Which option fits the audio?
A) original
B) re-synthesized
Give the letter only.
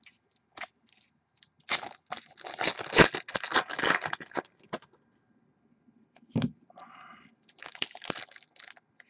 A